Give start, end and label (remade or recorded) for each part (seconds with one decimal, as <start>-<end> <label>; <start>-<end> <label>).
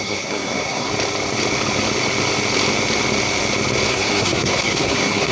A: 0.0-0.9 remade; 0.9-3.9 recorded; 3.9-5.3 remade